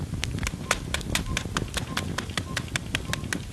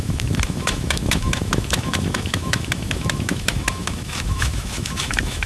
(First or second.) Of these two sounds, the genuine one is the first